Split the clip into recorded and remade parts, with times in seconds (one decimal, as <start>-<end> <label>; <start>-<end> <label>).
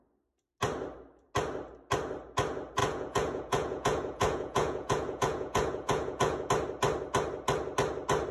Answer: 0.0-2.8 recorded; 2.8-6.5 remade; 6.5-8.3 recorded